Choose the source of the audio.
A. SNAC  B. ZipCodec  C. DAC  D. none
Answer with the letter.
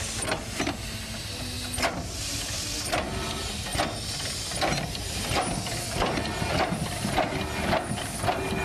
D